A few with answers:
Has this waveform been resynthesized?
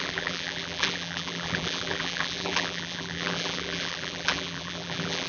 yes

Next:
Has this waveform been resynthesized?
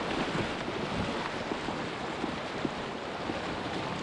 no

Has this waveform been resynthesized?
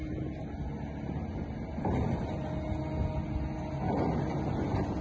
no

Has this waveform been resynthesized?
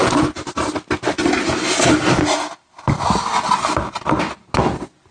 no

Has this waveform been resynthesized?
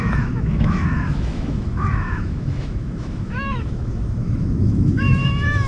yes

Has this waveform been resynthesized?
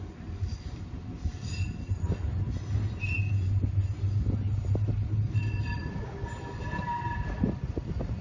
no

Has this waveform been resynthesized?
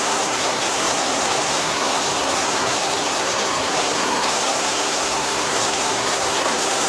yes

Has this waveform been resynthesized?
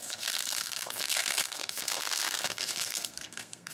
yes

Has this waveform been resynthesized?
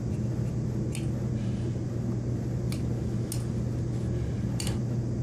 no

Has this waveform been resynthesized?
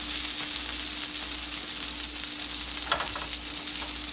no